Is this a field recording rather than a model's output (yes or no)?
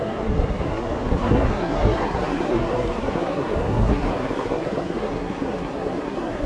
no